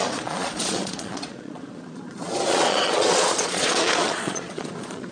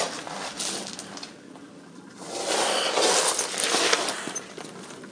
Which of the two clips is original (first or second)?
second